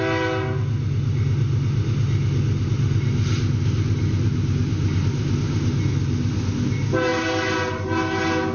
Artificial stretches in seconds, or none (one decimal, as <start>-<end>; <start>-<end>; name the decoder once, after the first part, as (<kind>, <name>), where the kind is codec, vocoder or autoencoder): none